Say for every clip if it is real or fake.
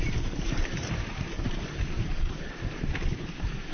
fake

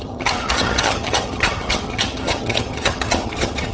fake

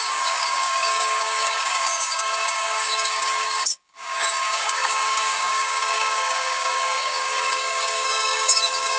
fake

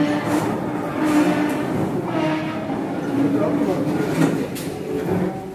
real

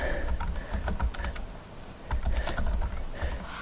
real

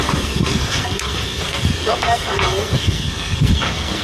fake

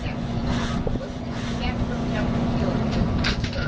fake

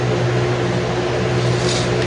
real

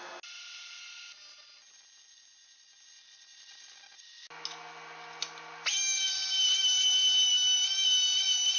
real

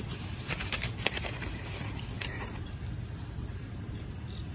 fake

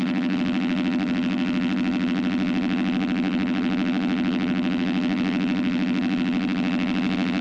fake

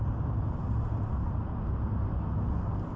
real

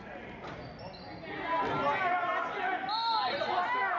real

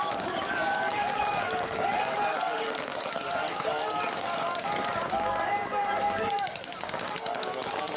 fake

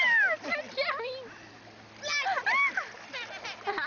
real